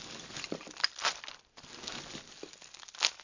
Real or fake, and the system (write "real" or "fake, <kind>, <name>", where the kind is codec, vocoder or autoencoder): real